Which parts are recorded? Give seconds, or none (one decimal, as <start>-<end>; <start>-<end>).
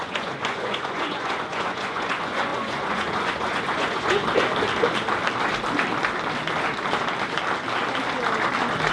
4.2-8.9